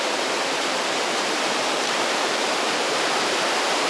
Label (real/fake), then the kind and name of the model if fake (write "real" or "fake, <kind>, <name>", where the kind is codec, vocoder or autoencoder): fake, vocoder, BigVGAN v2